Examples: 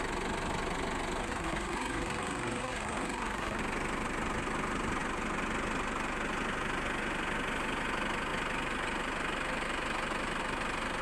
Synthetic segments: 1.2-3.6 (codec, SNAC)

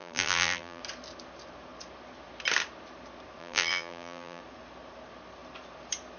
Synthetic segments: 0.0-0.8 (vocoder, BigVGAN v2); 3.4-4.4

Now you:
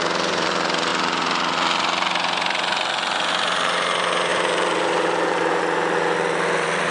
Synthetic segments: 4.3-5.6 (vocoder, BigVGAN v2)

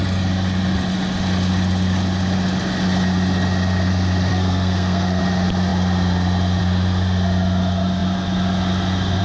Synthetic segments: 4.3-5.2 (codec, SNAC)

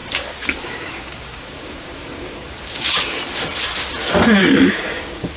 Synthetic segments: 0.0-3.2 (codec, DAC); 4.4-5.4

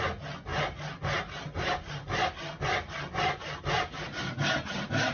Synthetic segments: none